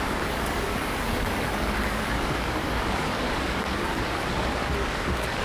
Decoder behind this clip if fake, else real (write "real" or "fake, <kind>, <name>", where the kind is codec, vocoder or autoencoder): fake, codec, DAC